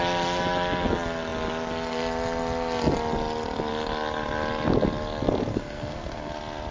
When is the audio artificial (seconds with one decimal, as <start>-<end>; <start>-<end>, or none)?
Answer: 5.5-6.3